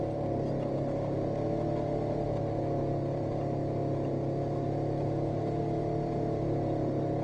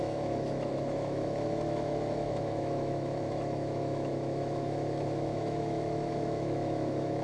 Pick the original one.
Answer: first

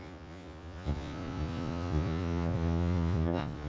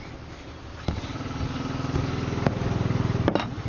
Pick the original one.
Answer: second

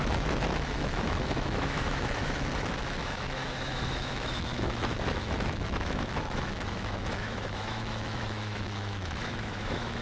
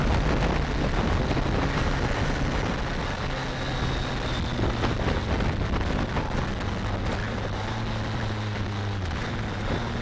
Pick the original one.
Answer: second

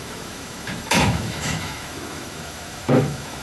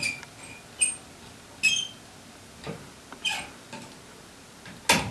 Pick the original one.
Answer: second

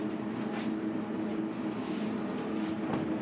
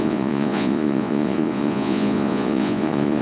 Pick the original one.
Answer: first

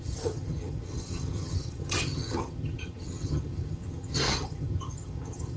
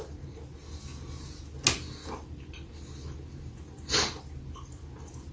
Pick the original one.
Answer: second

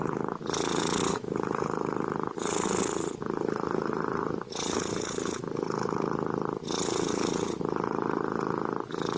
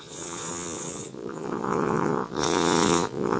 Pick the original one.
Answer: first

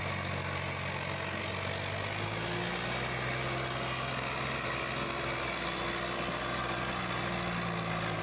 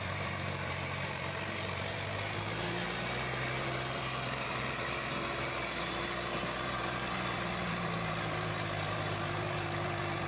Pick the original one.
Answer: first